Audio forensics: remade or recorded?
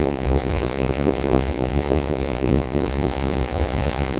remade